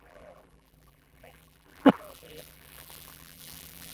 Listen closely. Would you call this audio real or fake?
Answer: fake